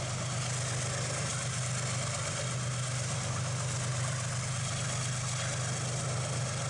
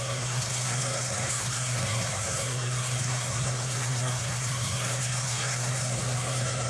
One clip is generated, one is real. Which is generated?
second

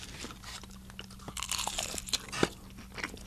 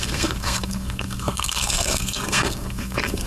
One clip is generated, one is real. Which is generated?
second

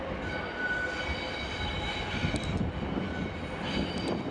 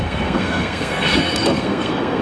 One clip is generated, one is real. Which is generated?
second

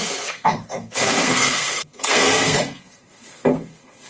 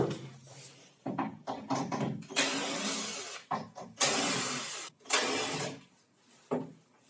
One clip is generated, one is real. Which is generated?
first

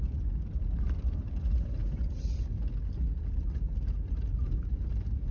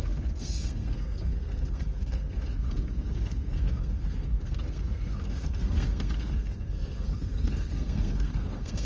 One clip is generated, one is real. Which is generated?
second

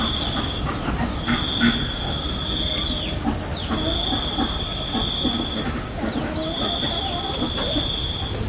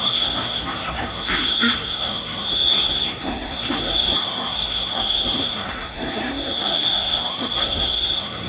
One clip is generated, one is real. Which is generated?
second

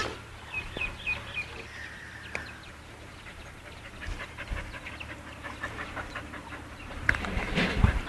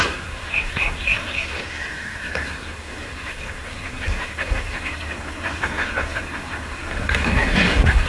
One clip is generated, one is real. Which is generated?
second